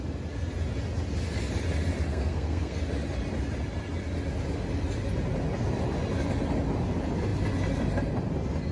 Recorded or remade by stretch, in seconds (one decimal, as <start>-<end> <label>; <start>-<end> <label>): 0.0-2.1 recorded; 2.1-2.8 remade; 2.8-8.7 recorded